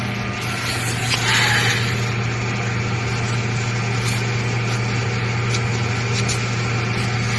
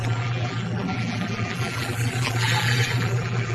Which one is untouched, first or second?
first